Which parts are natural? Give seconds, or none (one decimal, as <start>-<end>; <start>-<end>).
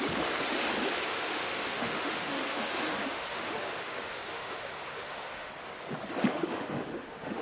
0.0-1.1; 5.5-6.3